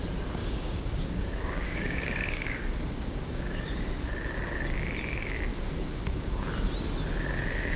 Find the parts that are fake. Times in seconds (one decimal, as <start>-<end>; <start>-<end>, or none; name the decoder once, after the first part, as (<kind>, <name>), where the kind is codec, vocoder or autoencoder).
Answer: 0.4-4.1 (codec, DAC); 5.5-6.5